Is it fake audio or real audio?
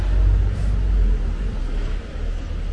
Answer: real